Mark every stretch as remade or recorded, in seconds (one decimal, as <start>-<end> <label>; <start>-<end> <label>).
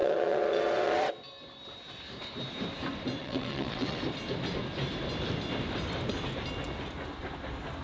0.0-1.1 remade; 1.1-3.2 recorded; 3.2-4.0 remade; 4.0-7.8 recorded